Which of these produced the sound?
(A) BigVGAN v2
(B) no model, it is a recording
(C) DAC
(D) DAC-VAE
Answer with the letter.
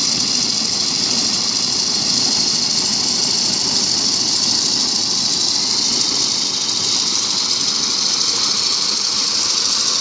B